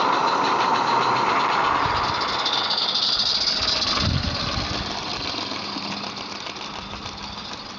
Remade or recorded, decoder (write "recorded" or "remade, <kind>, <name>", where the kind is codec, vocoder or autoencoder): recorded